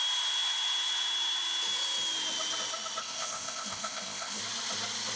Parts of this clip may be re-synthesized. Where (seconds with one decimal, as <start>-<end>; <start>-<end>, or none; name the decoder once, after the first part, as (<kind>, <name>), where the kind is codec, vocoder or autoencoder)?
3.0-4.4 (codec, ZipCodec)